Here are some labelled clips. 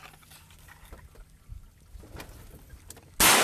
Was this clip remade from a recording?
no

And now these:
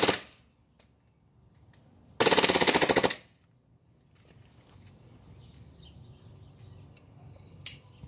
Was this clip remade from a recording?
no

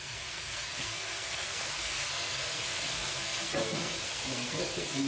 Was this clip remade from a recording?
yes